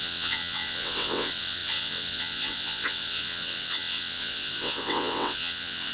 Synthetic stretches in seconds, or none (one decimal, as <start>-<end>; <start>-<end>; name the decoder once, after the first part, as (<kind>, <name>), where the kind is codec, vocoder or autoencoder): 0.0-5.9 (vocoder, WaveNeXt)